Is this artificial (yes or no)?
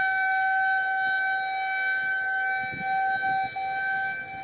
no